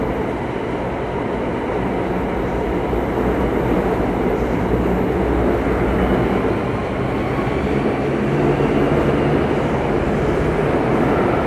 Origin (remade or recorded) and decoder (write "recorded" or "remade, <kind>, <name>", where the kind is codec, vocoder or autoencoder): recorded